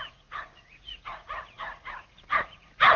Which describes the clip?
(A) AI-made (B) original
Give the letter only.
A